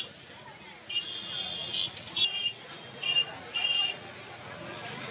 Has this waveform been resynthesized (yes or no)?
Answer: yes